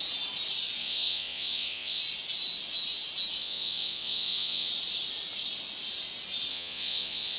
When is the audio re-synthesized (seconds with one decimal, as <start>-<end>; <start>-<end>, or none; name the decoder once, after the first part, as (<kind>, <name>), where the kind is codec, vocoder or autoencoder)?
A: 0.8-2.0 (vocoder, Vocos); 3.4-4.7; 6.5-7.4